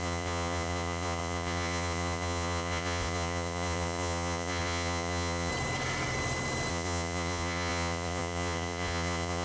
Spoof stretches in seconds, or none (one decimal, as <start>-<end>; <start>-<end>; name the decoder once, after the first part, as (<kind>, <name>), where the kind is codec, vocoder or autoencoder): 0.0-5.5 (vocoder, Vocos); 6.7-9.4